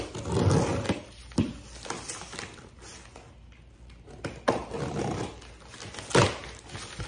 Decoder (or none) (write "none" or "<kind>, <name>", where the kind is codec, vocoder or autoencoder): none